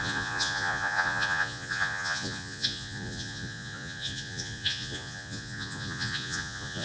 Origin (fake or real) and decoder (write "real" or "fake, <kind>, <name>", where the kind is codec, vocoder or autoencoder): fake, vocoder, Vocos